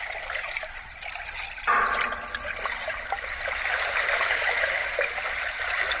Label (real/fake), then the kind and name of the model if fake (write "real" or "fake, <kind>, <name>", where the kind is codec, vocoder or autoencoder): real